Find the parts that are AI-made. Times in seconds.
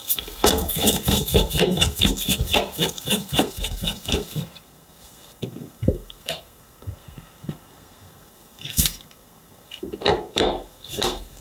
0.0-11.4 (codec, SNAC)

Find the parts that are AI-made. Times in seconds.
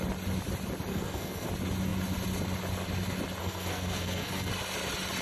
0.9-1.5 (codec, SNAC); 3.4-4.5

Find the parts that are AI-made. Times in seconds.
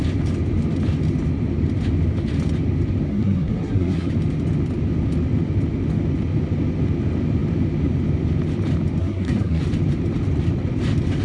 3.1-4.1 (codec, SNAC); 9.0-9.6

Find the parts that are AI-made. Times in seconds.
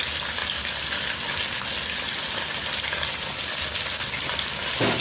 none